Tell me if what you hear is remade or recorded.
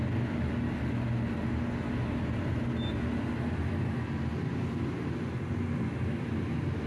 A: recorded